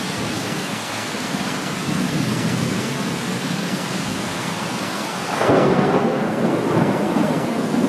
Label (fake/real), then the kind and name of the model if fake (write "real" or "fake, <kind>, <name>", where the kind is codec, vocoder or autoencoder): fake, codec, SNAC